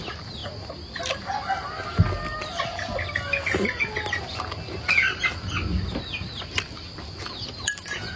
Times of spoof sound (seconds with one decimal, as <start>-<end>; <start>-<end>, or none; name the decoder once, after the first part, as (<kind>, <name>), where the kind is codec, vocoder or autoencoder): none